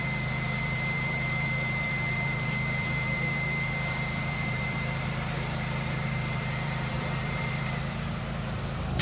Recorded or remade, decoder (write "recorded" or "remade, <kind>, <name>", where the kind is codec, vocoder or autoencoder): remade, vocoder, BigVGAN v2